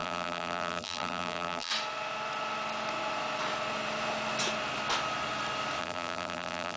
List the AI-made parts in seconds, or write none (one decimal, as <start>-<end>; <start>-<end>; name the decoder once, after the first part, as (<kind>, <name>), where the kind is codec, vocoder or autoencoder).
0.0-1.7 (vocoder, BigVGAN v2); 5.8-6.8